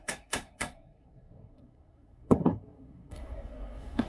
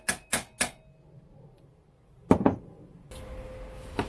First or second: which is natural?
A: second